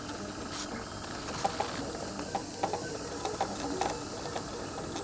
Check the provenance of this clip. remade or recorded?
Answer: recorded